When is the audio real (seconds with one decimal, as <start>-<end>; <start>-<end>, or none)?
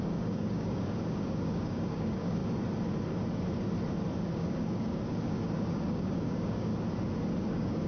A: 2.4-4.3; 6.7-7.5